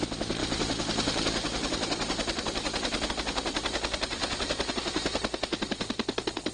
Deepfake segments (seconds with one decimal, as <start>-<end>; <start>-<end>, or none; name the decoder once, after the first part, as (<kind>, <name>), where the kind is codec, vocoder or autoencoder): 0.0-6.5 (vocoder, BigVGAN v2)